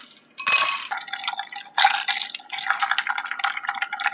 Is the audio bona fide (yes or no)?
yes